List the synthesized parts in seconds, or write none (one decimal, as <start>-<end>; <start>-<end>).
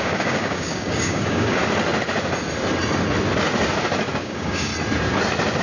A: 0.0-1.6; 4.2-4.7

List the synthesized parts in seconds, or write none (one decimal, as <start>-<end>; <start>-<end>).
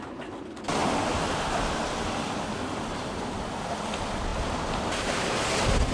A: none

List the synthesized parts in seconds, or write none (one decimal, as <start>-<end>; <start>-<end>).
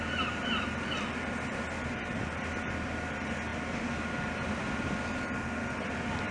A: none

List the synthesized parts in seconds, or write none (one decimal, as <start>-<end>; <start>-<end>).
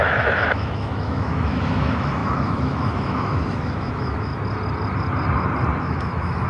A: 0.0-4.3; 5.8-6.5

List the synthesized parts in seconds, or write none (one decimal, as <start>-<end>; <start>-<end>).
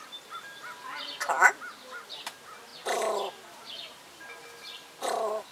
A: none